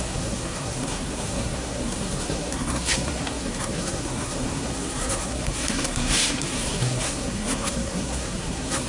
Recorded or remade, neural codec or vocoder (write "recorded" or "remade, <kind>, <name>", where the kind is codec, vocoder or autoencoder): remade, codec, SNAC